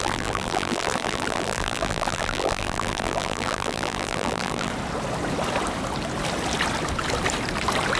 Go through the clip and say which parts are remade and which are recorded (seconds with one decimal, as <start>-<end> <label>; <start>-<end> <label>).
0.0-4.7 remade; 4.7-8.0 recorded